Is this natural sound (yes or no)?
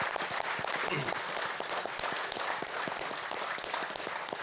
yes